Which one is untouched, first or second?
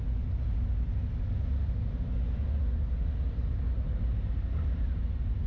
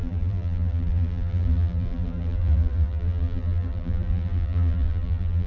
first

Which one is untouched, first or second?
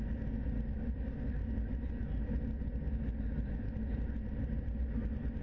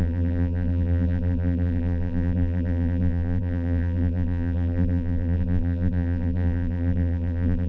first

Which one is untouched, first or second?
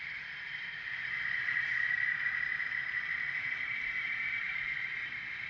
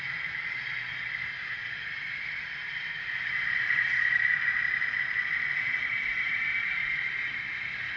second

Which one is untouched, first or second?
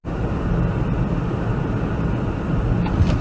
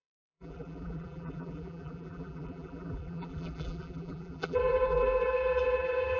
first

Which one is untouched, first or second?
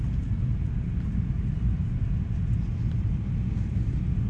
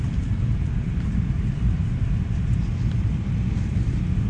first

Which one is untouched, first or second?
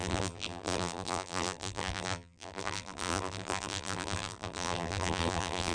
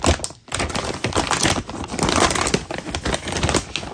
second